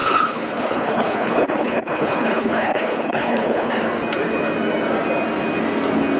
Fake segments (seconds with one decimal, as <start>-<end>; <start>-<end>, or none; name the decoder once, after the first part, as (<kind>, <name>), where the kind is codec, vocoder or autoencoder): 0.0-3.7 (codec, HILCodec)